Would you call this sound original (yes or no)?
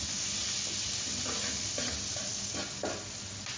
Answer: yes